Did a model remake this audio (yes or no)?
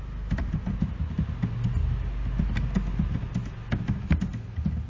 no